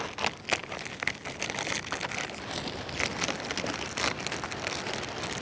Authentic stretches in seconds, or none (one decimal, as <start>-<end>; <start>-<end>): 0.0-5.4